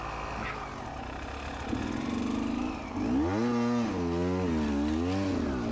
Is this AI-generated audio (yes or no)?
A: no